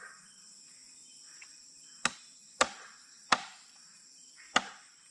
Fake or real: real